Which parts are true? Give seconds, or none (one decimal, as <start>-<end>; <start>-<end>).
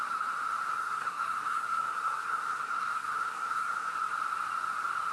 0.0-0.8; 3.9-5.1